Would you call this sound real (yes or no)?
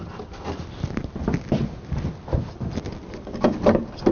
yes